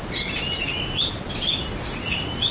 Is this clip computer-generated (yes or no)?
no